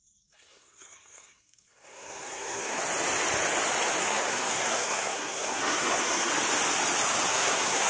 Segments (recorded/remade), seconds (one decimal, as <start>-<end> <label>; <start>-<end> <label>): 0.0-2.8 remade; 2.8-4.0 recorded; 4.0-6.3 remade; 6.3-7.3 recorded; 7.3-7.9 remade